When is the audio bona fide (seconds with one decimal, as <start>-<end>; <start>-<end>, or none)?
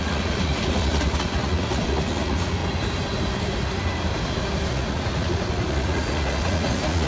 2.6-4.7